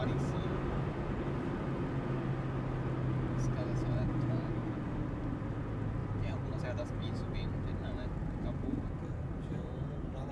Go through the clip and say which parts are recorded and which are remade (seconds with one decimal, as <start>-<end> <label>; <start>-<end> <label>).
0.0-6.0 recorded; 6.0-6.6 remade; 6.6-9.1 recorded; 9.1-10.3 remade